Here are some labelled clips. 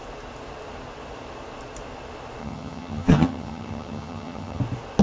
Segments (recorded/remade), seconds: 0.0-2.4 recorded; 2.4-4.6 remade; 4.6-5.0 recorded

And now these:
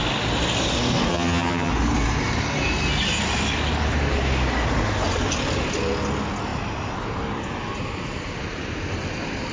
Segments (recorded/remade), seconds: 0.0-1.1 recorded; 1.1-1.7 remade; 1.7-9.5 recorded

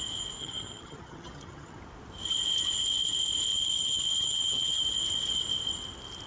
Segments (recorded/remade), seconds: 0.0-0.4 recorded; 0.4-1.8 remade; 1.8-3.5 recorded; 3.5-4.8 remade; 4.8-6.3 recorded

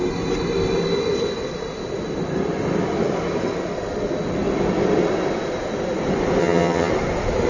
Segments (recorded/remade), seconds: 0.0-6.4 recorded; 6.4-6.9 remade; 6.9-7.5 recorded

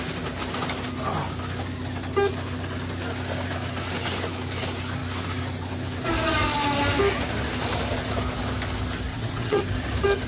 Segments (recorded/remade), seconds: 0.0-9.1 recorded; 9.1-9.6 remade; 9.6-10.3 recorded

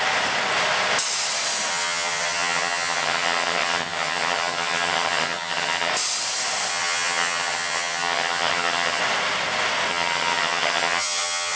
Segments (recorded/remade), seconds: 0.0-1.7 recorded; 1.7-5.9 remade; 5.9-6.7 recorded; 6.7-9.0 remade; 9.0-9.9 recorded; 9.9-11.6 remade